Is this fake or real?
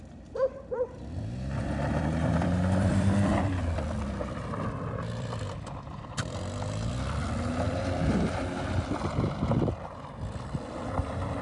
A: fake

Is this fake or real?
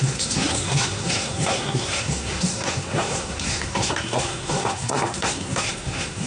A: fake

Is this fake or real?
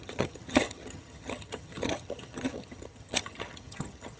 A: fake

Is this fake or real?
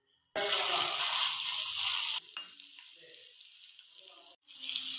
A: real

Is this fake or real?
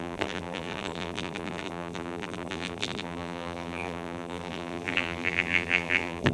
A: fake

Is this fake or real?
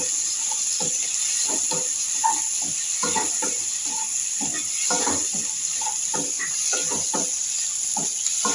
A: real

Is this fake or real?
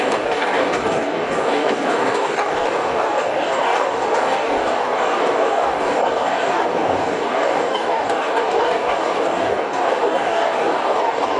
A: fake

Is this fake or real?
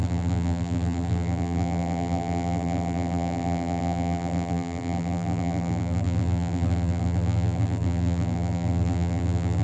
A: fake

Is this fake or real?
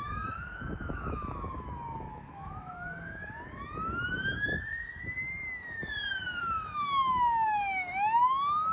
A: fake